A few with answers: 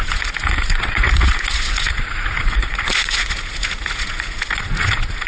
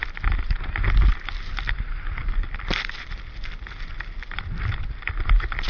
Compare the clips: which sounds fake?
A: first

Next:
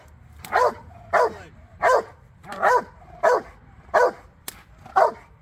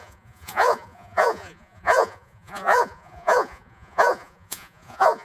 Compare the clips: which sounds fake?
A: second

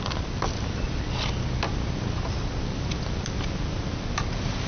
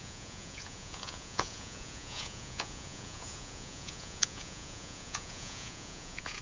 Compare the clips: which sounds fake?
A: second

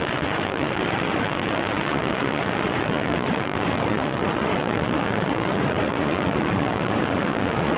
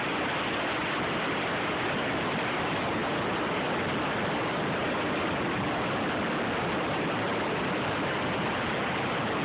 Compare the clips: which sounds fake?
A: first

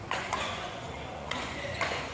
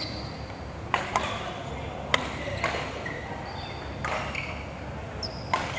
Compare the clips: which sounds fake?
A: first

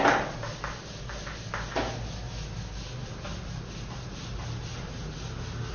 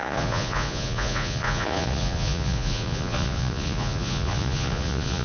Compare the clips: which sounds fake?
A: second